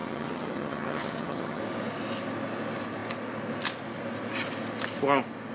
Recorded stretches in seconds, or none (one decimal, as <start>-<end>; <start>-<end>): 1.6-5.5